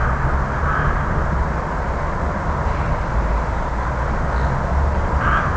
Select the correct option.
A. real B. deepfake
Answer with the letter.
A